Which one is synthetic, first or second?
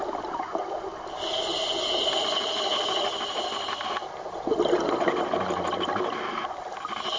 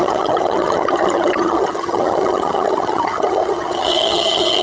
second